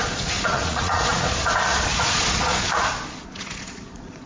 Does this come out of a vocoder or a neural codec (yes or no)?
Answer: yes